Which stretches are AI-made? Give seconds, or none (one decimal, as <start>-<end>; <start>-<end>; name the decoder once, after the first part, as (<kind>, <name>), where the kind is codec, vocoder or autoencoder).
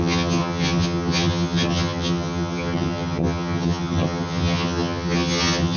0.0-5.8 (vocoder, HiFi-GAN)